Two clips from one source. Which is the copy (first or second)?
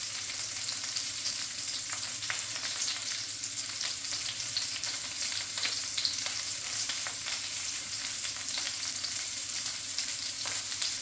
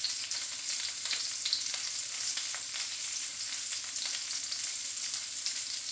first